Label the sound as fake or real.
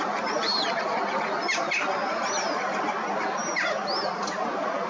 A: real